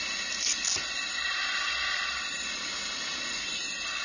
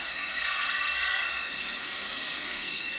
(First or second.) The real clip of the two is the first